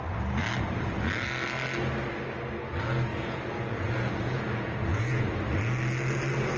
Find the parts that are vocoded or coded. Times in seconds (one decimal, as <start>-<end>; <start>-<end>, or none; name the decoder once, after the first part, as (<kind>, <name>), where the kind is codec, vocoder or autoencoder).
3.1-5.3 (vocoder, Vocos)